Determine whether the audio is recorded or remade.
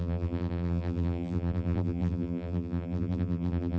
remade